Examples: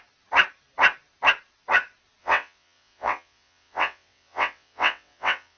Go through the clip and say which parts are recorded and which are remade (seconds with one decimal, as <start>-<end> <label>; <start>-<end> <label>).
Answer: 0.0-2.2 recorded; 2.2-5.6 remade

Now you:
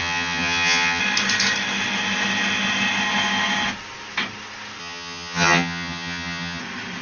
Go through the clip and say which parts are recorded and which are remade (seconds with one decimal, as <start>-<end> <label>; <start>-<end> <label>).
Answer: 0.0-1.0 remade; 1.0-4.8 recorded; 4.8-6.6 remade; 6.6-7.0 recorded

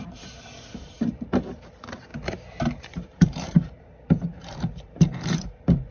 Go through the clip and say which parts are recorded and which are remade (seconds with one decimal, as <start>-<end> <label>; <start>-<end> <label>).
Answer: 0.0-2.1 remade; 2.1-2.6 recorded; 2.6-5.9 remade

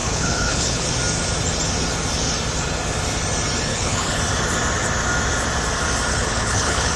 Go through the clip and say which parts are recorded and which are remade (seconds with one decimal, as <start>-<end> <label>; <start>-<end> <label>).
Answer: 0.0-0.9 remade; 0.9-3.7 recorded; 3.7-4.2 remade; 4.2-6.1 recorded; 6.1-7.0 remade